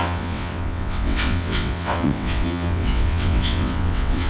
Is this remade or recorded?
remade